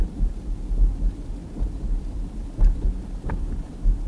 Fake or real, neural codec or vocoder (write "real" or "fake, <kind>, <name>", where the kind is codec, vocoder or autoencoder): fake, vocoder, BigVGAN v2